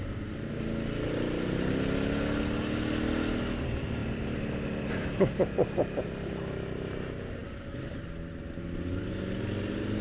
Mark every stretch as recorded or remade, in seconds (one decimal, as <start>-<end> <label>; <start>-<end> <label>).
0.0-10.0 recorded